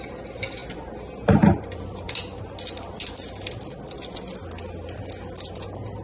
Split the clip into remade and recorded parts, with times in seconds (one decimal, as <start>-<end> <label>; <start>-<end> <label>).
0.0-0.6 recorded; 0.6-2.1 remade; 2.1-6.0 recorded

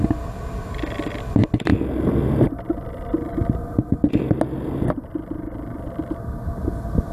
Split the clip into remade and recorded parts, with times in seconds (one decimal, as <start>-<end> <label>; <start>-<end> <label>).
0.0-7.1 recorded

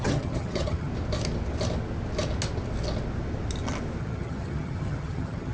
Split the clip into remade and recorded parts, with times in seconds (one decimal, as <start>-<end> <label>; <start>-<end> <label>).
0.0-0.9 remade; 0.9-4.0 recorded; 4.0-5.5 remade

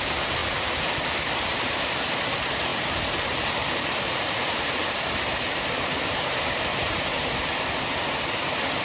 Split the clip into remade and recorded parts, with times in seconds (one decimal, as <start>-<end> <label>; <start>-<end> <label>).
0.0-0.4 remade; 0.4-1.4 recorded; 1.4-8.8 remade

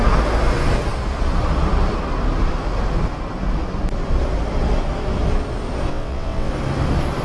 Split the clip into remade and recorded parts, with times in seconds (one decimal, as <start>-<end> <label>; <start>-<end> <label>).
0.0-5.9 recorded; 5.9-6.5 remade; 6.5-7.2 recorded

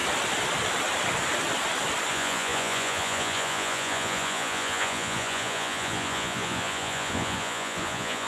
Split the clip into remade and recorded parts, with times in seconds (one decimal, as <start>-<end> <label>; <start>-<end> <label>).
0.0-2.1 recorded; 2.1-8.3 remade

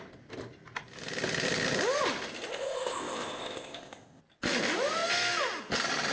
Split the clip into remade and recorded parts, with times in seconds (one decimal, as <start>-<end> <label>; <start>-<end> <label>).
0.0-2.5 recorded; 2.5-4.2 remade; 4.2-6.1 recorded